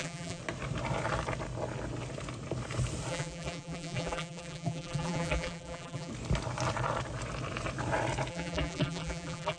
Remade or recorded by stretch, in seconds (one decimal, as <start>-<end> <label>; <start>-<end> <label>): 0.0-0.4 remade; 0.4-3.1 recorded; 3.1-6.1 remade; 6.1-8.3 recorded; 8.3-9.6 remade